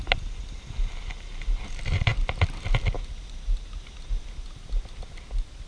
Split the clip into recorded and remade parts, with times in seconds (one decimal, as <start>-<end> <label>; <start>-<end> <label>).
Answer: 0.0-5.7 recorded